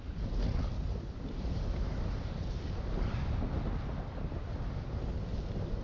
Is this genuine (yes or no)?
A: yes